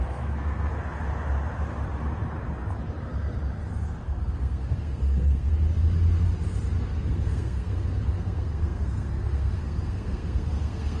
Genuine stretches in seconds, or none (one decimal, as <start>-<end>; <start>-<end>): 0.7-4.0; 5.5-7.1